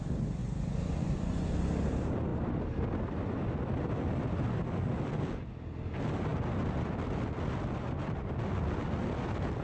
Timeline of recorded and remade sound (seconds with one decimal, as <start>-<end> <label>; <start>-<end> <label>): 0.0-0.4 recorded; 0.4-1.5 remade; 1.5-9.6 recorded